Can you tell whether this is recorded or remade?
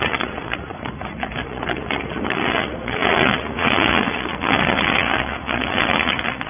remade